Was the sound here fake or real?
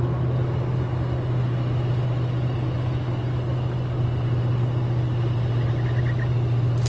real